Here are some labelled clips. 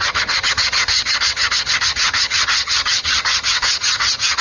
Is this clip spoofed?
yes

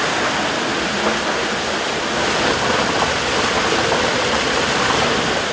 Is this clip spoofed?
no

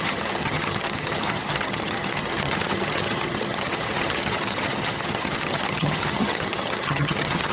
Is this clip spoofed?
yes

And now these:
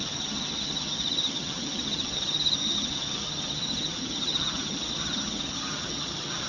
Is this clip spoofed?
yes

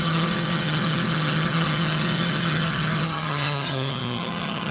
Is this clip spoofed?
yes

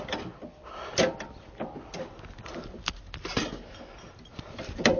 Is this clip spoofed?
no